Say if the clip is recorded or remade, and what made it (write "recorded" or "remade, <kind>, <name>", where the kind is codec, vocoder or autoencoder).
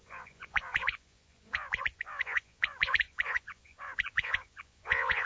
remade, vocoder, Vocos